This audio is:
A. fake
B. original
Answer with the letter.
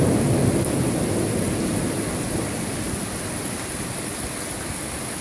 B